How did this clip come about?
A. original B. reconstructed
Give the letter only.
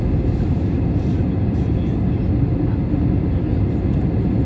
A